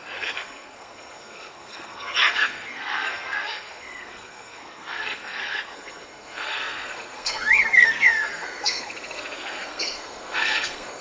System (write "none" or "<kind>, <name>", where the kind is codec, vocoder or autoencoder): codec, SNAC